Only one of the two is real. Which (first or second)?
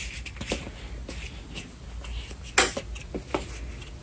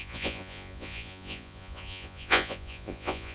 first